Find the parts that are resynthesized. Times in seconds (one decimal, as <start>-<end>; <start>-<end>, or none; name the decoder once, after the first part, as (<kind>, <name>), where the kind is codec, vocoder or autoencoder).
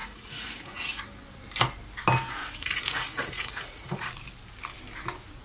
0.0-1.0 (vocoder, Vocos); 2.4-4.1